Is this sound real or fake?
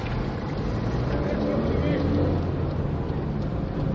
real